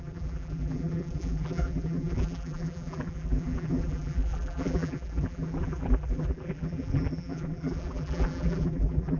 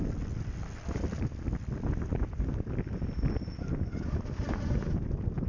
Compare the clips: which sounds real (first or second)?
second